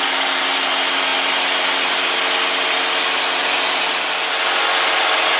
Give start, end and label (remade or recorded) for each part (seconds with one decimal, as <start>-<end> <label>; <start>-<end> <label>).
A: 0.0-5.4 recorded